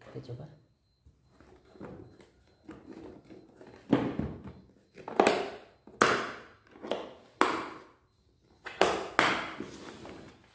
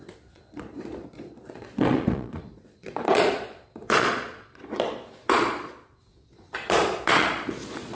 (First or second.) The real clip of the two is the first